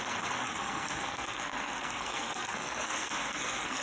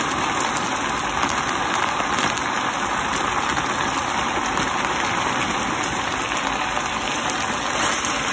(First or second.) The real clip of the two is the second